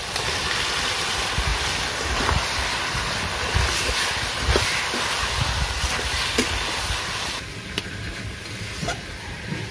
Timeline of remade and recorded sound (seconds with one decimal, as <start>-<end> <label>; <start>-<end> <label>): 0.0-9.7 recorded